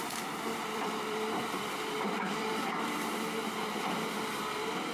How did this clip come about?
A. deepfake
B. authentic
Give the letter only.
A